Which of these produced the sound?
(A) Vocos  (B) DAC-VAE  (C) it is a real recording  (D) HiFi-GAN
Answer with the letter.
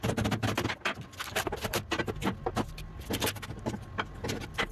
C